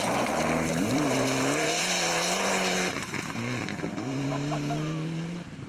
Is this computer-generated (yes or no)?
yes